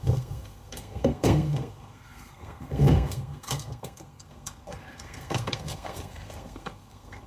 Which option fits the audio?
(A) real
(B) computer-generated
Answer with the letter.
B